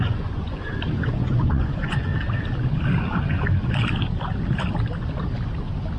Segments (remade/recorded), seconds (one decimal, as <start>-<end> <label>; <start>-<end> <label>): 0.0-2.1 remade; 2.1-6.0 recorded